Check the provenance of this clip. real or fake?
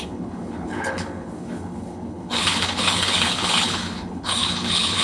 fake